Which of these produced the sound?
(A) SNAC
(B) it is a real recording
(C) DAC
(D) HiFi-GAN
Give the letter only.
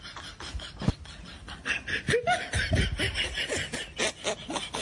B